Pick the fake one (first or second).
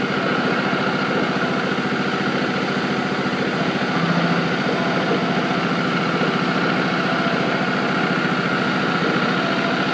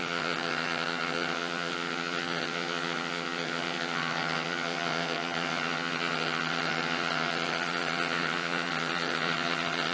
second